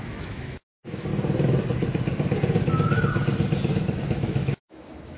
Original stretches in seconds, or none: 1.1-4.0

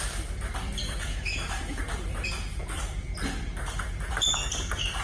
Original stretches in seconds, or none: 0.0-1.1; 1.8-5.0

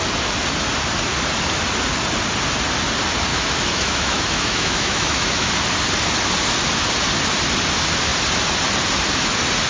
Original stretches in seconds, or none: 0.0-3.3; 5.5-9.7

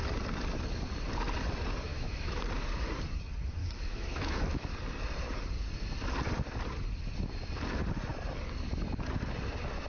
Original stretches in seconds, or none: 0.0-1.9; 2.4-3.6; 4.7-9.9